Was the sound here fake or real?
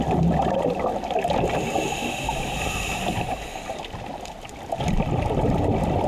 real